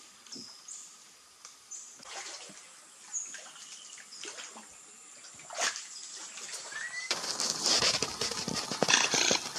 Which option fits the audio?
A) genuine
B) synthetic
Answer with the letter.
A